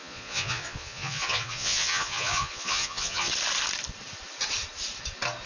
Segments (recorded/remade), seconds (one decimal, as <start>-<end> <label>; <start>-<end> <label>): 0.0-3.3 remade; 3.3-5.5 recorded